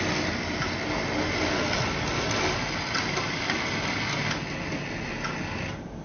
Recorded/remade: recorded